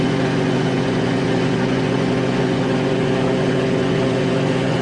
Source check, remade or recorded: remade